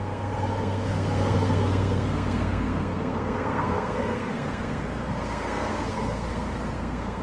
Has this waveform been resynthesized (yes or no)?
yes